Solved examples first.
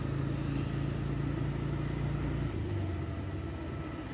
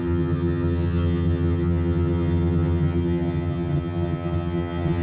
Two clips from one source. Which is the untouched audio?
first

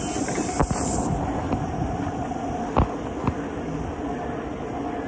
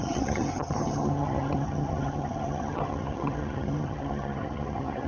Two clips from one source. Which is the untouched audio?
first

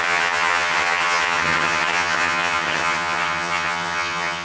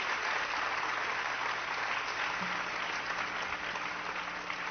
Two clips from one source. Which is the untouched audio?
second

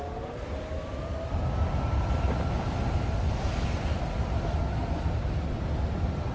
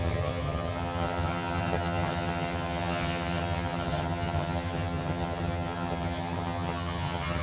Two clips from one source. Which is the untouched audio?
first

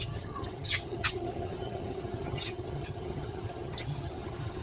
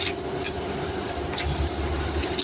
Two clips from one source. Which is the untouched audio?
second